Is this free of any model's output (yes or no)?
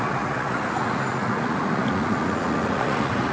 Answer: no